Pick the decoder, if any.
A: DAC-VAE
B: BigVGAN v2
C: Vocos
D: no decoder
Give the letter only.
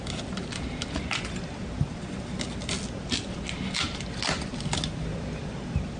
D